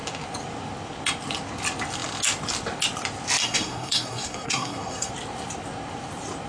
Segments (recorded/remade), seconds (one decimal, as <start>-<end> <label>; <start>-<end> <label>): 0.0-3.4 recorded; 3.4-5.1 remade; 5.1-6.5 recorded